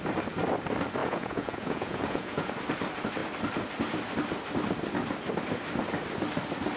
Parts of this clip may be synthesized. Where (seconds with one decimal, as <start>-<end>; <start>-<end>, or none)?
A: 1.0-2.5